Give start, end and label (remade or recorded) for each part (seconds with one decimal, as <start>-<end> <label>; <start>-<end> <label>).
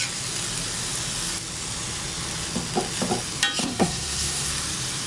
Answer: 0.0-3.6 recorded; 3.6-4.5 remade; 4.5-5.1 recorded